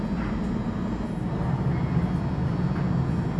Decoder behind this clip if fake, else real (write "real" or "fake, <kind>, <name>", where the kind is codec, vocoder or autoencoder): real